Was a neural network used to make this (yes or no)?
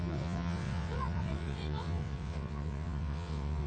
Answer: yes